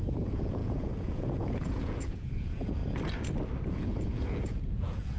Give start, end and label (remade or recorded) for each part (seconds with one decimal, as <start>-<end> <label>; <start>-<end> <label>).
0.0-2.8 remade; 2.8-3.7 recorded; 3.7-5.2 remade